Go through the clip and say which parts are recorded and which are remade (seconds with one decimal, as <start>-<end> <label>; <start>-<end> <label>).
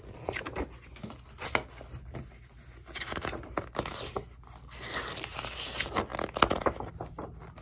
0.0-7.6 recorded